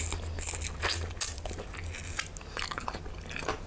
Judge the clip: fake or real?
real